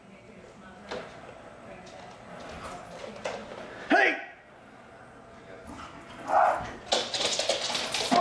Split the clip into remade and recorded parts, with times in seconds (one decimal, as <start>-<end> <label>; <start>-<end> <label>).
0.0-8.2 recorded